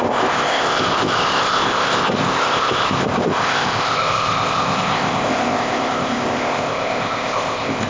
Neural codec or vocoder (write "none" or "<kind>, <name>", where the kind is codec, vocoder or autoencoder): codec, ZipCodec